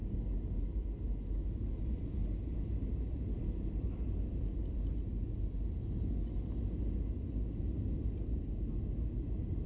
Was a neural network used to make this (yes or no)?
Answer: no